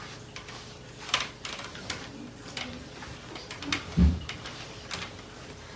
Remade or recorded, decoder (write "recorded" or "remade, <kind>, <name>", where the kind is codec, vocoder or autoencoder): recorded